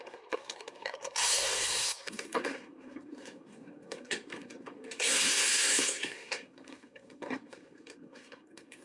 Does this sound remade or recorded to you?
remade